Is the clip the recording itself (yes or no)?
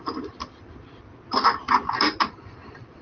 yes